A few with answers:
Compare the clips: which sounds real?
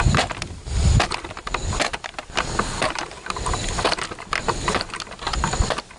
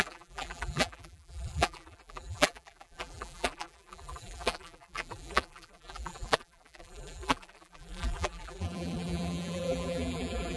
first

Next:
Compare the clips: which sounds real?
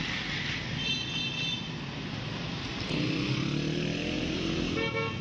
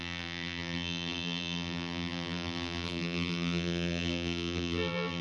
first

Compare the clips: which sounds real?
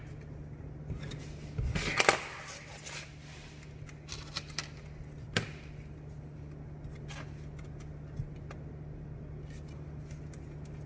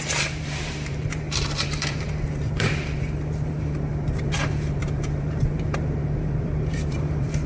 first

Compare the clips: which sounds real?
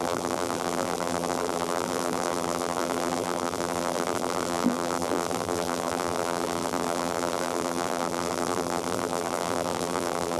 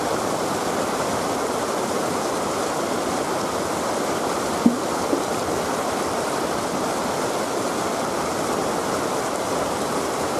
second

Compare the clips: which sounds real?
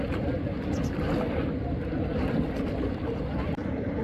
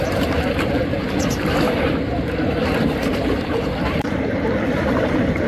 first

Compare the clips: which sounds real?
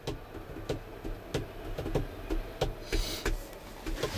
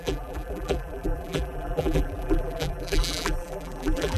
first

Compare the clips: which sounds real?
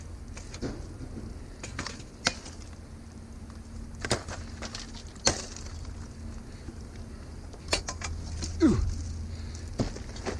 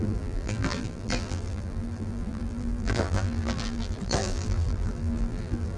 first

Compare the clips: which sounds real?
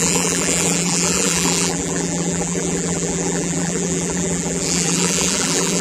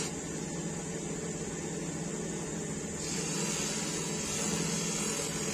second